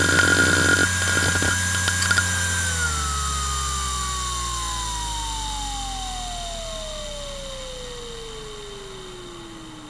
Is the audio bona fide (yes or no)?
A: yes